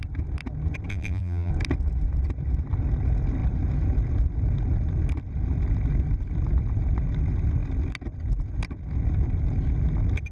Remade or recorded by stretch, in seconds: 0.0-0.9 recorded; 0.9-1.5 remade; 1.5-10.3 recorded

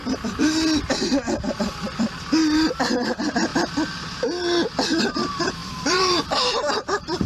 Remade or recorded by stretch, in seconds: 0.0-2.9 recorded; 2.9-3.5 remade; 3.5-5.0 recorded; 5.0-7.3 remade

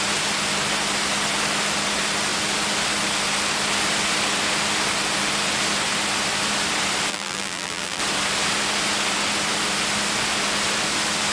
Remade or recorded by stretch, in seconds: 0.0-7.1 recorded; 7.1-8.0 remade; 8.0-11.3 recorded

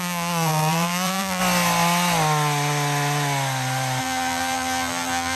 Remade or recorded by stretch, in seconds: 0.0-1.4 remade; 1.4-4.0 recorded; 4.0-5.4 remade

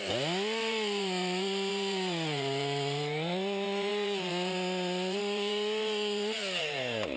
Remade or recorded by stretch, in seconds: 0.0-7.2 remade

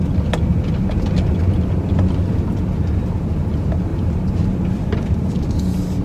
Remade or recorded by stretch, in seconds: 0.0-3.9 recorded; 3.9-4.7 remade; 4.7-6.0 recorded